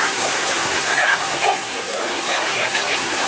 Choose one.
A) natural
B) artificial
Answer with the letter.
B